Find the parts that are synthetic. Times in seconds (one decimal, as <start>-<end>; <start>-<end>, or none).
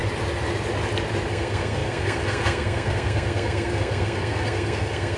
1.3-5.2